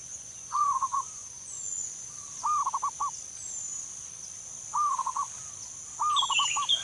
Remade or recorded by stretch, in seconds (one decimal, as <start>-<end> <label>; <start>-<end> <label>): 0.0-2.1 remade; 2.1-6.8 recorded